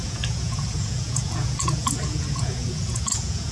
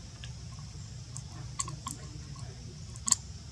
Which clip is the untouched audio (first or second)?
second